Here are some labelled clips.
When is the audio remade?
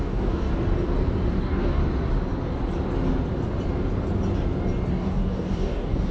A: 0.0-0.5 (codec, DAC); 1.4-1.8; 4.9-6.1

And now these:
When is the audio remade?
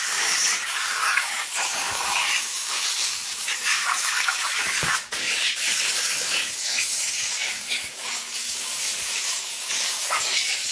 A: 0.0-10.7 (codec, DAC)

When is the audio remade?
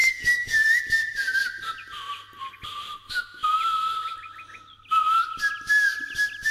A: 0.0-0.8 (codec, DAC)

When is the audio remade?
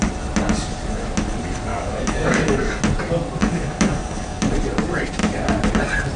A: 1.7-2.8 (codec, DAC); 3.4-4.5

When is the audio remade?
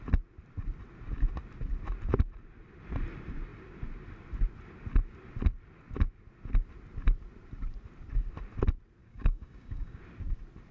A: 9.0-10.0 (codec, DAC)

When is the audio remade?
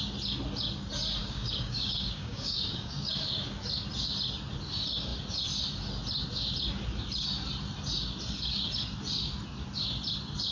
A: 1.2-3.1 (codec, DAC)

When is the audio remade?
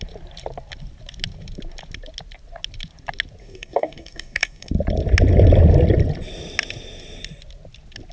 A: 3.4-4.7 (codec, DAC)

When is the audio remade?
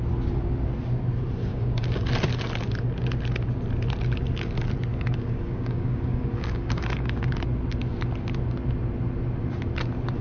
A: 1.5-2.1 (codec, DAC); 4.9-7.4